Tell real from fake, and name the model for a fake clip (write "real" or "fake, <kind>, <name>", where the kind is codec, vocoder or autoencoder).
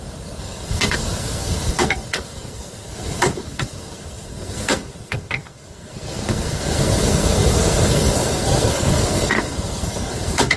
fake, codec, SNAC